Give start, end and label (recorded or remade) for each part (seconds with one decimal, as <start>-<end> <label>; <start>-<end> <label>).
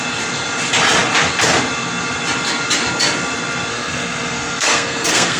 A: 0.0-3.7 recorded; 3.7-5.4 remade